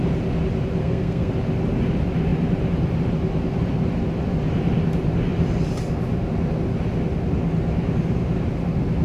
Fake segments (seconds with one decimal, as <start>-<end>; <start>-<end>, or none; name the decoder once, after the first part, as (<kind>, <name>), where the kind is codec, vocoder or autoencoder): 0.8-1.3 (codec, SNAC)